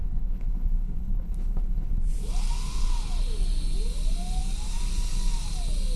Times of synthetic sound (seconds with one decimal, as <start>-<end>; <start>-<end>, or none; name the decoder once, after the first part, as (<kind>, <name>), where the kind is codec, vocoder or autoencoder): 0.0-2.0 (codec, HILCodec)